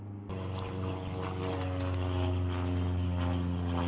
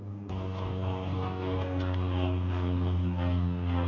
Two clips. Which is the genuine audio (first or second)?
first